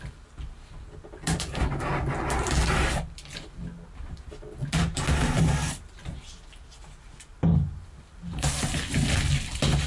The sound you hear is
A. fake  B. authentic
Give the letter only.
B